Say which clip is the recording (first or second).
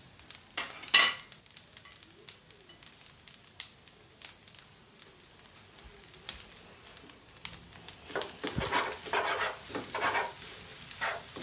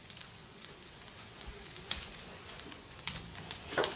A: first